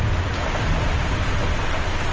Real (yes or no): yes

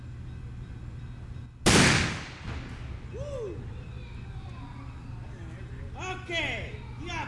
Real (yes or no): yes